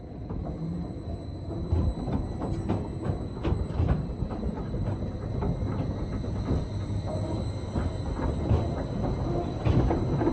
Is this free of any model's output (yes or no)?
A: yes